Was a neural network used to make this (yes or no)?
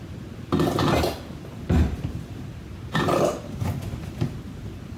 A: no